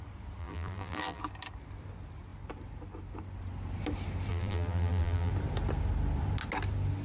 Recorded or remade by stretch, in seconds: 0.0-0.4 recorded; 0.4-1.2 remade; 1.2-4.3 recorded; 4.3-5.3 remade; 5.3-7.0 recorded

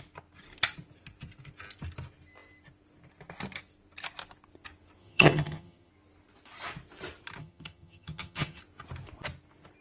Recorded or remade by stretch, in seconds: 0.0-5.0 recorded; 5.0-5.9 remade; 5.9-7.4 recorded; 7.4-8.6 remade; 8.6-9.8 recorded

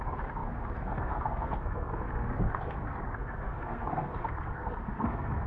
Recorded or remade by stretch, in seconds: 0.0-5.5 remade

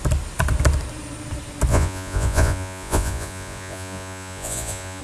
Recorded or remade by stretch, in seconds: 0.0-1.7 recorded; 1.7-5.0 remade

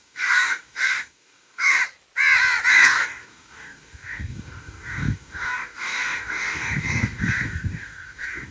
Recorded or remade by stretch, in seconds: 0.0-1.8 remade; 1.8-2.7 recorded; 2.7-8.5 remade